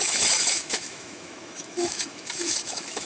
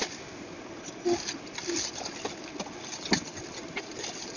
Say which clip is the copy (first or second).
first